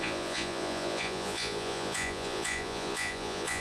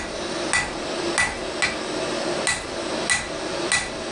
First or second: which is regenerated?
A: first